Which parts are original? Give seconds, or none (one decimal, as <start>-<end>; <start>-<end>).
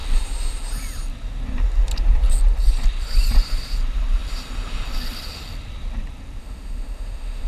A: 0.0-6.4